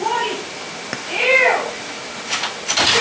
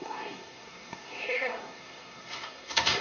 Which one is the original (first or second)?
first